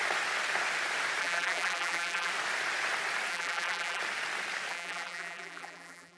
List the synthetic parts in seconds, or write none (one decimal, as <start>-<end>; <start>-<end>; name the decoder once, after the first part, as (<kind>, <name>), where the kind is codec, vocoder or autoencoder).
1.2-2.3 (vocoder, BigVGAN v2); 3.3-4.0; 4.7-6.2